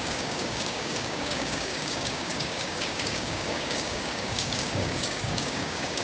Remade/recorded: remade